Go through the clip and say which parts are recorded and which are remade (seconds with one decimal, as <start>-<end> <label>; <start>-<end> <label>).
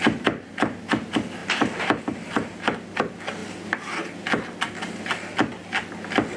0.0-1.4 recorded; 1.4-2.3 remade; 2.3-6.4 recorded